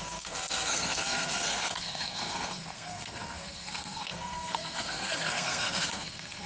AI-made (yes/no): yes